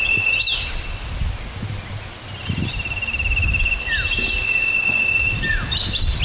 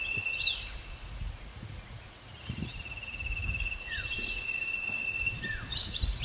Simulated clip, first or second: second